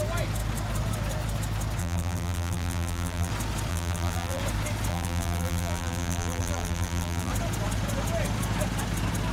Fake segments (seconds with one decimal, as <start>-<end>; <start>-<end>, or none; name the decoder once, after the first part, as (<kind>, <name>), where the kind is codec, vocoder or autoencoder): 1.8-3.3 (vocoder, BigVGAN v2); 3.7-4.4; 4.9-7.3